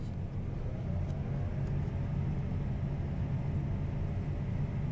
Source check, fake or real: real